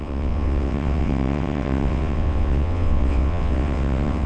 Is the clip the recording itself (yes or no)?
no